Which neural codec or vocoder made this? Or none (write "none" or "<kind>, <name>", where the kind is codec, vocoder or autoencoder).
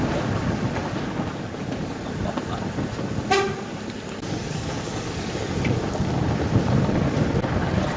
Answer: none